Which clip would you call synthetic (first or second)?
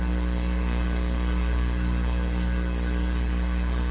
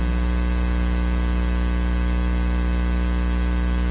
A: first